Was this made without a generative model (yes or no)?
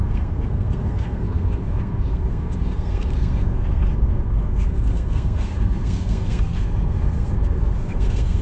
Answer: no